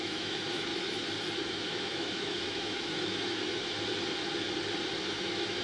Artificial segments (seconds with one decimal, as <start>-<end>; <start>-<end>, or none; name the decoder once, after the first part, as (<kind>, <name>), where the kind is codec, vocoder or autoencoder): 0.0-0.7 (autoencoder, DAC-VAE); 1.4-3.6; 5.1-5.6